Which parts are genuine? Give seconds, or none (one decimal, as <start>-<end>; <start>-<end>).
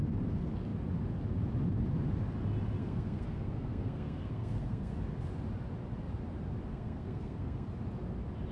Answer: 0.0-2.8; 4.9-6.7; 7.7-8.5